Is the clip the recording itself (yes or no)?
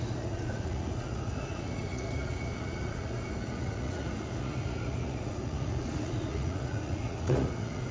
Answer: no